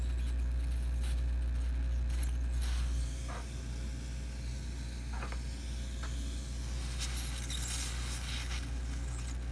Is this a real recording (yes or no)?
yes